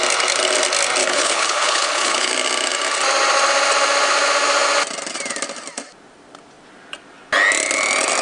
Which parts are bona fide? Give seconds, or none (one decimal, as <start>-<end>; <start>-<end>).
0.0-1.0; 2.3-8.2